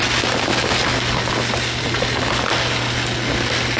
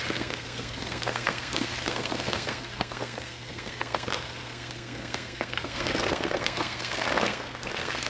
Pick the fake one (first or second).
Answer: second